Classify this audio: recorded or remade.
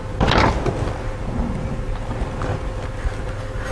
recorded